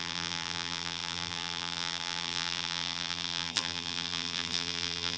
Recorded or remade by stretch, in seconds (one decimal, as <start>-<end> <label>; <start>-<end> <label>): 0.0-5.2 remade